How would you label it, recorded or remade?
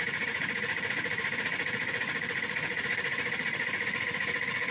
remade